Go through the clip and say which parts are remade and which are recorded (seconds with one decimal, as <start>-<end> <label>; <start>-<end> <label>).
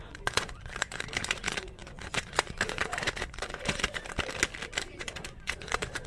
0.0-4.0 remade; 4.0-5.0 recorded; 5.0-6.1 remade